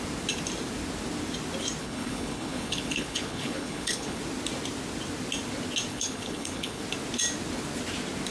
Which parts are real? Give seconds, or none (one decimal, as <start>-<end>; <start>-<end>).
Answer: 0.0-1.8; 4.2-5.9; 6.8-8.3